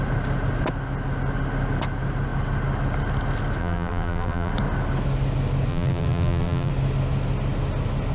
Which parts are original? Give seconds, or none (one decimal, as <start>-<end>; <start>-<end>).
0.0-3.6; 4.5-5.7; 6.7-8.1